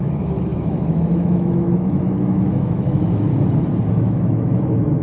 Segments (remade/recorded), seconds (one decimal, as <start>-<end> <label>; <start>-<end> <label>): 0.0-3.3 remade; 3.3-3.9 recorded; 3.9-5.0 remade

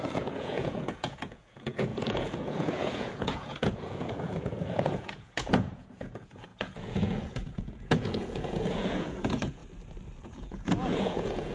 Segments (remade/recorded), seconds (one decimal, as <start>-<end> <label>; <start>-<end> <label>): 0.0-9.6 remade; 9.6-10.2 recorded; 10.2-11.5 remade

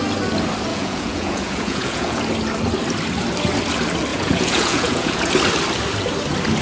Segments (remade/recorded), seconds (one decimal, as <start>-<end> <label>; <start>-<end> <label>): 0.0-0.7 recorded; 0.7-2.2 remade; 2.2-4.1 recorded; 4.1-5.3 remade; 5.3-6.6 recorded

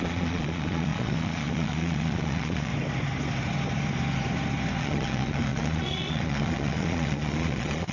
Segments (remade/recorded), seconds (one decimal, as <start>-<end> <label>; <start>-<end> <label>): 0.0-2.7 remade; 2.7-4.8 recorded; 4.8-7.9 remade